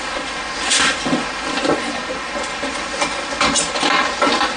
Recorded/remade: recorded